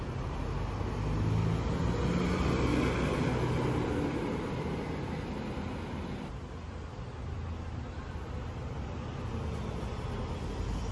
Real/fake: real